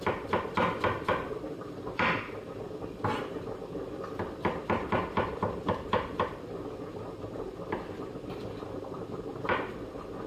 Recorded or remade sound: remade